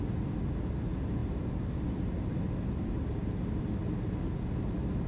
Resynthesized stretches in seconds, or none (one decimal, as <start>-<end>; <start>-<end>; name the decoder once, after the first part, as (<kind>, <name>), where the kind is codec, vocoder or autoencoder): none